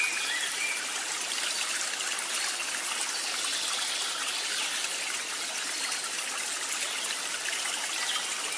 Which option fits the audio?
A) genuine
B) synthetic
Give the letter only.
A